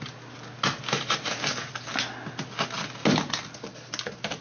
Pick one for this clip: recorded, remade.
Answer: recorded